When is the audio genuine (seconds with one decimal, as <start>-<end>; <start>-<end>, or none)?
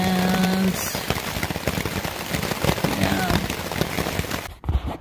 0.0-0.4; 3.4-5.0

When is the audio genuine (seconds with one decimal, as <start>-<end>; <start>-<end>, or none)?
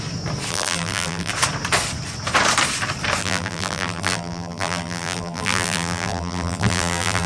0.0-0.5; 1.3-3.2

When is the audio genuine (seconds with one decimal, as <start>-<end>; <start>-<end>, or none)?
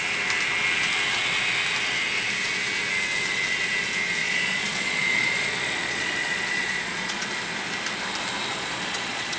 0.0-4.2; 7.3-8.5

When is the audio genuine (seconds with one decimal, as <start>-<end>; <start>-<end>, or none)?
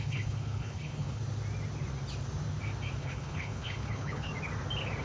1.2-3.0; 4.3-5.0